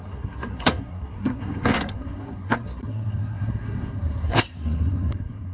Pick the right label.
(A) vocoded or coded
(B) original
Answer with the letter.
A